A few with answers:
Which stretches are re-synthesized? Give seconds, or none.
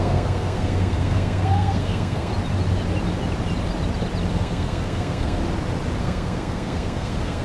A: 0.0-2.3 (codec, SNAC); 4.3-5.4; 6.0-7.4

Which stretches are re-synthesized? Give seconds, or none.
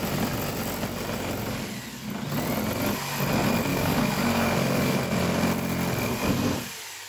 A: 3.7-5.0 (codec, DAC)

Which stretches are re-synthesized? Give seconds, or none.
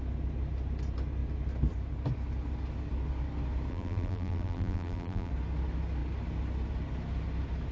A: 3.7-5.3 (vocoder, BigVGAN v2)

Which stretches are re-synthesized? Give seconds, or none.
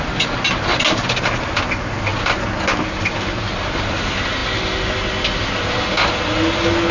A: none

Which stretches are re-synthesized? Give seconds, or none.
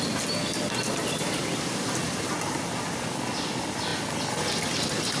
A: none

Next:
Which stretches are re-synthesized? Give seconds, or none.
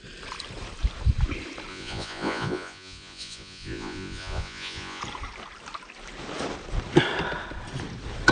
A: 1.7-5.0 (vocoder, Vocos)